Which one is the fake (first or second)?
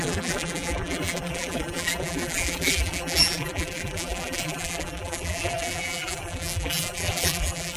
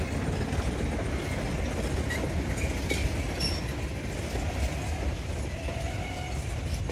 first